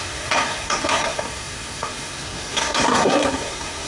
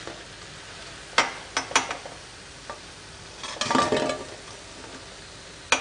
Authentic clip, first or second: second